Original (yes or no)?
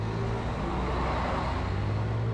yes